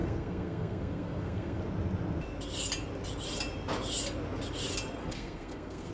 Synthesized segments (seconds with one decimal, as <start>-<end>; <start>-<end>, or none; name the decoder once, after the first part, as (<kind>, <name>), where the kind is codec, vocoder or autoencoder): 0.0-1.6 (codec, SNAC); 5.0-5.9